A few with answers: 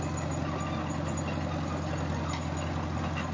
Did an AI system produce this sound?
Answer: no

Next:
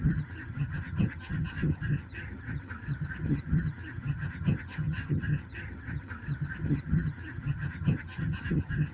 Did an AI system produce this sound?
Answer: yes